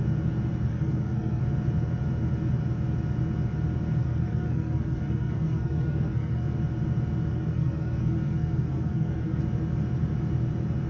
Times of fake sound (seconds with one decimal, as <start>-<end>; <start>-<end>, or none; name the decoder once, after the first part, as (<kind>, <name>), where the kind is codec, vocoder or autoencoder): 0.7-1.4 (codec, SNAC); 4.0-6.4; 7.3-9.4